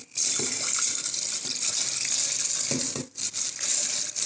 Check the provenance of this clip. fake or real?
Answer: real